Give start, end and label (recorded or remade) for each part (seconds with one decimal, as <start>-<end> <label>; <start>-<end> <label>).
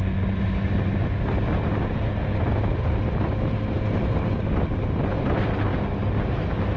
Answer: 0.0-6.8 recorded